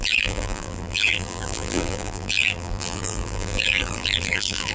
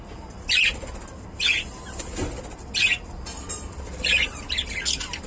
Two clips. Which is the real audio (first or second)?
second